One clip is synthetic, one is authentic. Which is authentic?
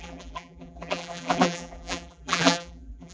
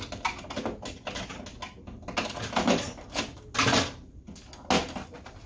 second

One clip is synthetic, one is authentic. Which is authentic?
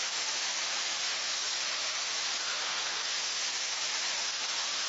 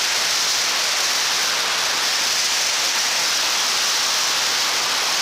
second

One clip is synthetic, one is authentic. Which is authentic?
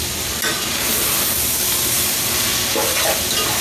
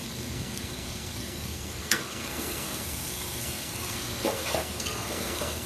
first